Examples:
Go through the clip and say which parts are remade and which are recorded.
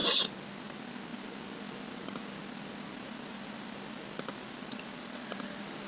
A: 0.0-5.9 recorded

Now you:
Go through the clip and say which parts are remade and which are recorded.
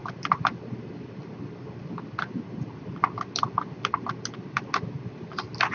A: 0.0-5.7 recorded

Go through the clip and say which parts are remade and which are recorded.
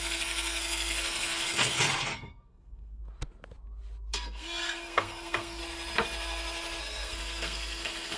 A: 0.0-3.0 remade; 3.0-4.1 recorded; 4.1-5.6 remade; 5.6-6.8 recorded; 6.8-8.2 remade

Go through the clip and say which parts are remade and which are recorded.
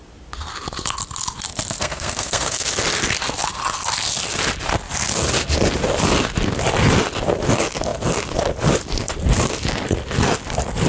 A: 0.0-1.8 recorded; 1.8-2.7 remade; 2.7-10.9 recorded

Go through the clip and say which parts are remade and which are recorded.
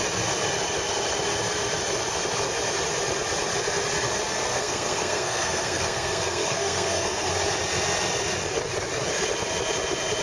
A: 0.0-4.5 recorded; 4.5-7.3 remade; 7.3-10.2 recorded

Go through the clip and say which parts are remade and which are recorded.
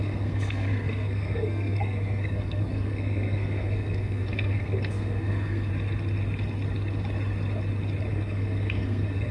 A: 0.0-5.7 remade; 5.7-8.1 recorded; 8.1-9.3 remade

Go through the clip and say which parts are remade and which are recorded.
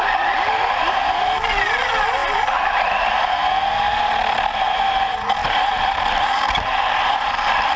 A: 0.0-7.8 recorded